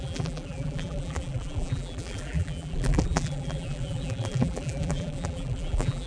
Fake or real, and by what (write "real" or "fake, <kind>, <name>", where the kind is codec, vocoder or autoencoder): fake, vocoder, BigVGAN v2